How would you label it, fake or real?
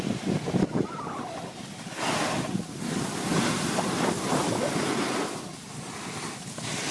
real